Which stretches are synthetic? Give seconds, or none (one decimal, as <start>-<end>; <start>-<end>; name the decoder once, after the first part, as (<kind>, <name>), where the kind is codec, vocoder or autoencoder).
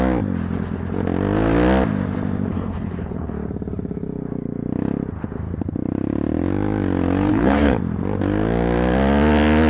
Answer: 2.5-3.3 (codec, HILCodec); 7.3-7.8